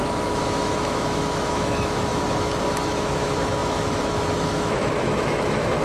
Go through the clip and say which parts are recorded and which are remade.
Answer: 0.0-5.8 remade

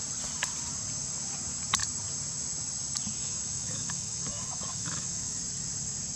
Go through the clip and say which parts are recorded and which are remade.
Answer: 0.0-3.2 recorded; 3.2-5.4 remade; 5.4-6.2 recorded

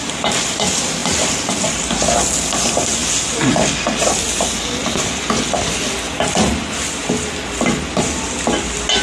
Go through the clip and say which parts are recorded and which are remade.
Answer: 0.0-9.0 recorded